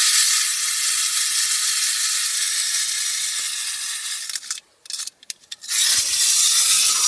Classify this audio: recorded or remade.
recorded